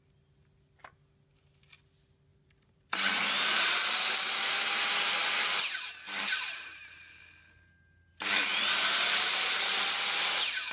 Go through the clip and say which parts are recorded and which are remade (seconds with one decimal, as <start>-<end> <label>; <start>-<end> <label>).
0.0-2.3 recorded; 2.3-4.0 remade; 4.0-8.5 recorded; 8.5-9.8 remade; 9.8-10.7 recorded